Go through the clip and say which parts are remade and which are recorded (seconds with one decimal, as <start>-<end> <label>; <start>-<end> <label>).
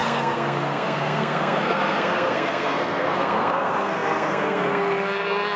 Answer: 0.0-5.6 remade